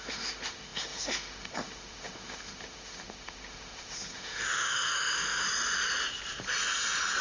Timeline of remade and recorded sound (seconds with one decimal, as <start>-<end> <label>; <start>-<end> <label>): 0.0-5.4 remade; 5.4-7.2 recorded